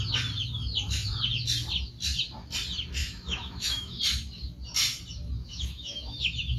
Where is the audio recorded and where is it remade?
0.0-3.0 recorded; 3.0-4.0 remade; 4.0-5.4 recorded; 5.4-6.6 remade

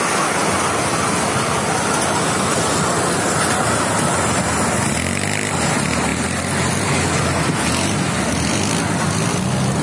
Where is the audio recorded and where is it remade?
0.0-9.8 recorded

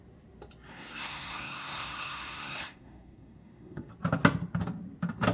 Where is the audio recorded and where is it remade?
0.0-0.7 recorded; 0.7-3.9 remade; 3.9-5.3 recorded

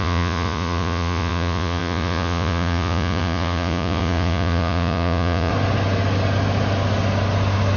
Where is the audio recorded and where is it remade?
0.0-5.5 remade; 5.5-7.8 recorded